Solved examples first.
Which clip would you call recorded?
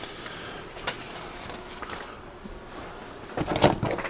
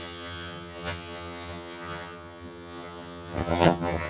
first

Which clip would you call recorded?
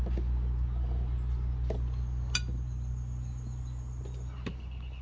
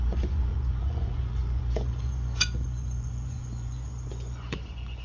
first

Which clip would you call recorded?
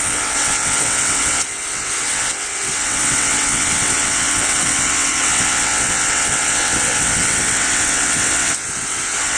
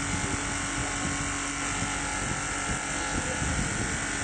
second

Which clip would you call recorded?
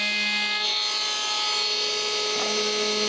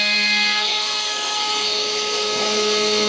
first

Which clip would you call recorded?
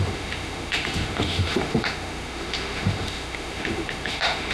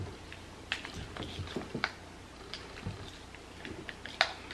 second